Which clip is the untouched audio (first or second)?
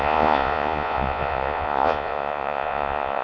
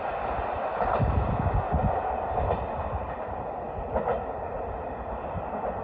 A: second